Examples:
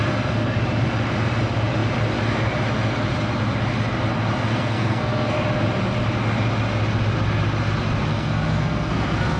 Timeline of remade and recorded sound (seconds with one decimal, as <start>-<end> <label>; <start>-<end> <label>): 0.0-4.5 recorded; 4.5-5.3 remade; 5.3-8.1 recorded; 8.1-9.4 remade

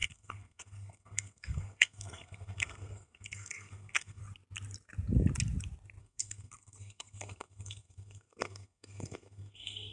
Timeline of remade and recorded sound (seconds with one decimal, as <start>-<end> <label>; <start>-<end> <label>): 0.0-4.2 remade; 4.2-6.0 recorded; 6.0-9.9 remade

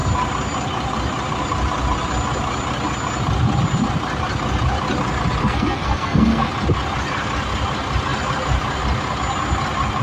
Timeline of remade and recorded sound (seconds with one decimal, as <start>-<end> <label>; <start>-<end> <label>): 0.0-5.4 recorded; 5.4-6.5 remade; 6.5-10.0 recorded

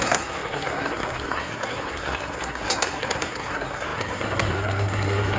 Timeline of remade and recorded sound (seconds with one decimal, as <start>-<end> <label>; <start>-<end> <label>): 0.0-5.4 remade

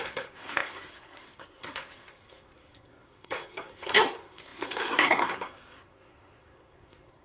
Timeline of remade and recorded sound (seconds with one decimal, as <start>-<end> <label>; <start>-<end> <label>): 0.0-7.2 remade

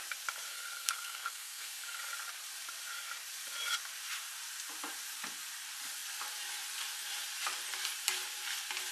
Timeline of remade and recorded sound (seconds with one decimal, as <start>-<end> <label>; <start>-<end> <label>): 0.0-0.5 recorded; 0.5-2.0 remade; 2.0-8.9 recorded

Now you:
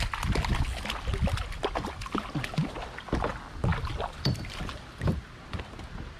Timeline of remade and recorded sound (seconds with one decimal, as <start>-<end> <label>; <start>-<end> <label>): 0.0-6.2 recorded

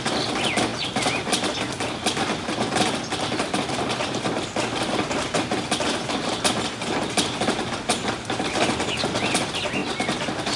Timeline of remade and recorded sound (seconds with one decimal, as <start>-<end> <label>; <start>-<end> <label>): 0.0-10.6 recorded